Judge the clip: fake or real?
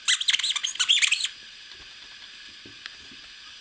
real